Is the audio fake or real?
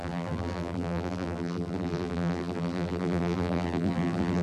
fake